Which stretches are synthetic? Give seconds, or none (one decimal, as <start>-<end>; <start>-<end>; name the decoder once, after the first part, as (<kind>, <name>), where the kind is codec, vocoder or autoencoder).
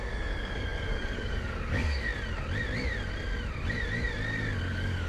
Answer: 0.0-2.1 (codec, DAC); 4.6-5.1